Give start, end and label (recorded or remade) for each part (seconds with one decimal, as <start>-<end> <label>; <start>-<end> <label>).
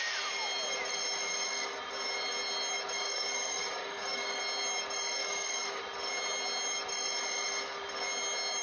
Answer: 0.0-3.0 recorded; 3.0-4.4 remade; 4.4-5.2 recorded; 5.2-5.8 remade; 5.8-8.6 recorded